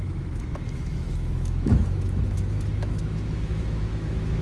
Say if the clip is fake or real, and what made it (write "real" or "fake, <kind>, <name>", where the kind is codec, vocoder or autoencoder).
fake, autoencoder, DAC-VAE